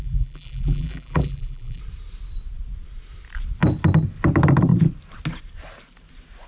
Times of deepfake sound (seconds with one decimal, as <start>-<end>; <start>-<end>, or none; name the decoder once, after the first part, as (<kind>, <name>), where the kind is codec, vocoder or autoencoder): 0.0-1.8 (vocoder, BigVGAN v2)

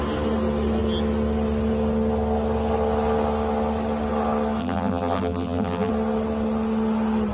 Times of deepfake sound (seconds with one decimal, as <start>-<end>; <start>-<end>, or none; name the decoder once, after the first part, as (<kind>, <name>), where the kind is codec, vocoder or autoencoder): 4.6-5.9 (vocoder, BigVGAN v2)